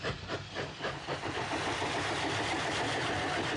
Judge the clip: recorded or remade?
recorded